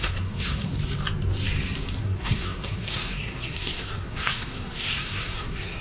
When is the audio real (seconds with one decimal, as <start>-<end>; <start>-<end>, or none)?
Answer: 0.7-2.0